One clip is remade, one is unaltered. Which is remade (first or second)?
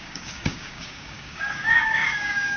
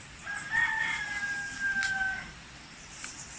first